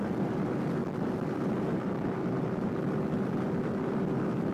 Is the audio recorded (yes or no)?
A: yes